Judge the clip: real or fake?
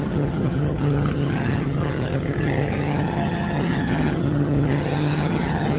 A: fake